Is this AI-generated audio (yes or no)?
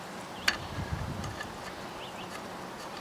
no